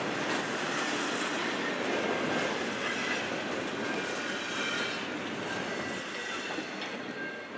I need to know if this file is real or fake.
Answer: real